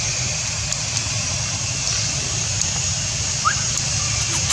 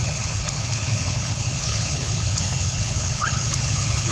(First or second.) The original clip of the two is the first